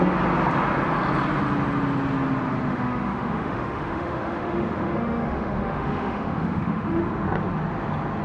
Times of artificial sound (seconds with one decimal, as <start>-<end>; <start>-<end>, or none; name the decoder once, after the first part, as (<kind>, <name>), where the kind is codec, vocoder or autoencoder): 2.7-7.0 (autoencoder, DAC-VAE)